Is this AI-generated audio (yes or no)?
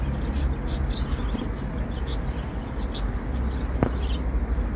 no